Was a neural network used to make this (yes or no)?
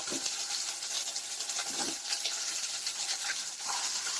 no